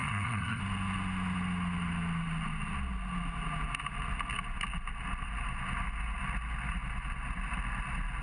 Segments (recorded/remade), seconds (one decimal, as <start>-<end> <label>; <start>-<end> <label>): 0.0-0.6 remade; 0.6-8.2 recorded